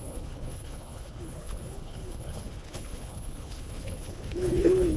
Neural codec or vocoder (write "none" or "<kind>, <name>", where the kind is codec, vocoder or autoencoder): codec, HILCodec